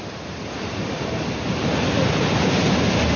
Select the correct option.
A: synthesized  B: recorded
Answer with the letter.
B